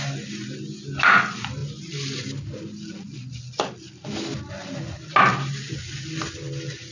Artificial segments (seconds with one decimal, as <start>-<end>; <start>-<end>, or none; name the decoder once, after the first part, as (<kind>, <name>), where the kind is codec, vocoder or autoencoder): none